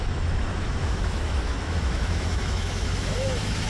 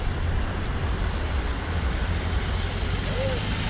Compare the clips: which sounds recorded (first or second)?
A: second